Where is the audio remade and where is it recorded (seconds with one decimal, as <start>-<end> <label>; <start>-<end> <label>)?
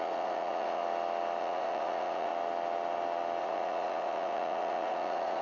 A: 0.0-0.8 remade; 0.8-1.4 recorded; 1.4-2.3 remade; 2.3-3.4 recorded; 3.4-5.4 remade